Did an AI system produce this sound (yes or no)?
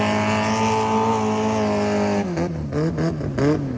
no